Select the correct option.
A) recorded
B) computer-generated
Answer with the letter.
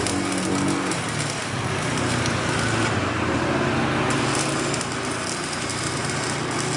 A